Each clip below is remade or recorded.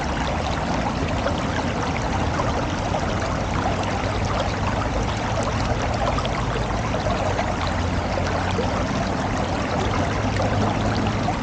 recorded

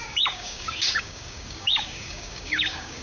remade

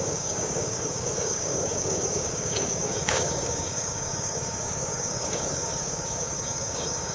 remade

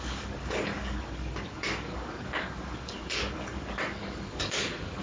remade